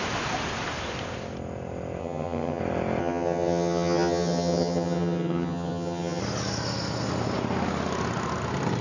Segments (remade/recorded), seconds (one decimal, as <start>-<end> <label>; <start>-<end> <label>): 0.0-2.0 recorded; 2.0-2.6 remade; 2.6-3.0 recorded; 3.0-6.2 remade; 6.2-8.8 recorded